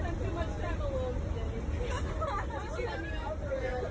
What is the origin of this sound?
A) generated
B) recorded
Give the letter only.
B